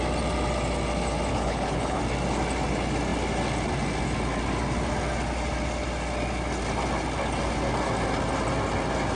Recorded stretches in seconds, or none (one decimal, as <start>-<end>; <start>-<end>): 0.0-1.3; 2.0-9.2